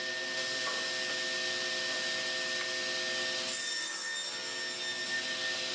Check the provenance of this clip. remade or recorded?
recorded